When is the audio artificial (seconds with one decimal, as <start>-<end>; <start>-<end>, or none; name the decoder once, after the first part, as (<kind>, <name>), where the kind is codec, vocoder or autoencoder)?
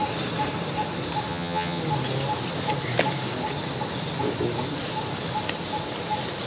1.3-1.8 (vocoder, HiFi-GAN)